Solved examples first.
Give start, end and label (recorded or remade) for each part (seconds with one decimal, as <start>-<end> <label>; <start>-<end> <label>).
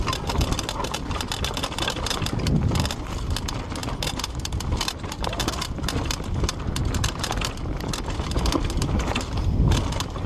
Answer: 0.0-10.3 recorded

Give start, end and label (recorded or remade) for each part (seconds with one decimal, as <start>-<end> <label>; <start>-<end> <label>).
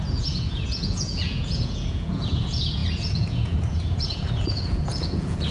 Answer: 0.0-5.5 remade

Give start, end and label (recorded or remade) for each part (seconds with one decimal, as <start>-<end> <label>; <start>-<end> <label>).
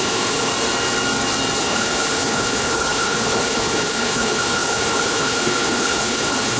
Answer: 0.0-0.5 remade; 0.5-1.6 recorded; 1.6-6.6 remade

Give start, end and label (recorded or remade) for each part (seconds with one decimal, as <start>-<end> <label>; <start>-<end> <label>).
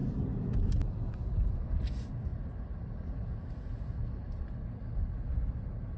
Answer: 0.0-6.0 recorded